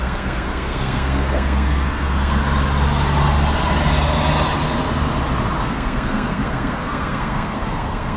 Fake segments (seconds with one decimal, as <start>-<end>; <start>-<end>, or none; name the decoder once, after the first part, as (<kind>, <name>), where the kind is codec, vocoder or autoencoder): 0.0-2.4 (codec, SNAC); 5.6-8.2

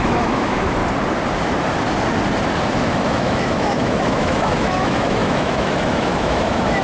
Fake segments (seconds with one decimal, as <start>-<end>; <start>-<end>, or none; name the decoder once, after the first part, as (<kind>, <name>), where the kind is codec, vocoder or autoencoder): 0.0-0.8 (autoencoder, DAC-VAE); 2.8-6.8